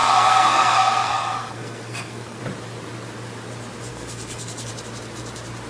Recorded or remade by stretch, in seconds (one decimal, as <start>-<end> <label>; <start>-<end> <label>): 0.0-2.4 remade; 2.4-3.9 recorded; 3.9-4.7 remade; 4.7-5.7 recorded